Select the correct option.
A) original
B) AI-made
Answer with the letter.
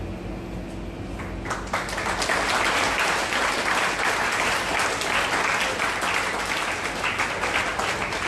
A